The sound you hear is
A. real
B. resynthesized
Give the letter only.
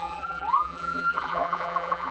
B